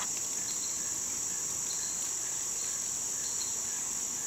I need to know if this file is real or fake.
real